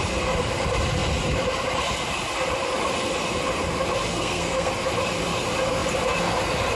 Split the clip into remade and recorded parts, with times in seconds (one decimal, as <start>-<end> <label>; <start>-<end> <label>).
0.0-4.1 recorded; 4.1-4.7 remade; 4.7-6.8 recorded